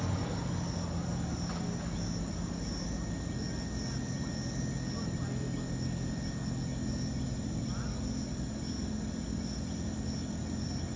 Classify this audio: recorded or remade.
recorded